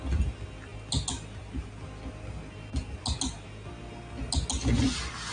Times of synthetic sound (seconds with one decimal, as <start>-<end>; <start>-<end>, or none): none